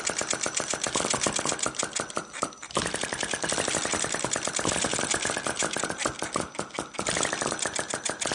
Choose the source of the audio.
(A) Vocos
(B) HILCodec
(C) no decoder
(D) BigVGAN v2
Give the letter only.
C